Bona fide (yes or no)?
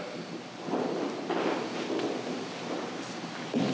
yes